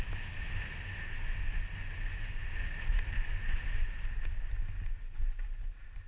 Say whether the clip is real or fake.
real